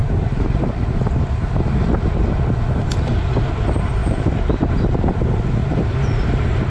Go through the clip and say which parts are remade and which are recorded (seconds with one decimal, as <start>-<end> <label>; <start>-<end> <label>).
0.0-0.7 remade; 0.7-4.0 recorded; 4.0-4.7 remade; 4.7-5.6 recorded; 5.6-6.7 remade